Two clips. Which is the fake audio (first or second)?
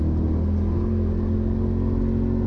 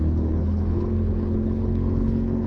second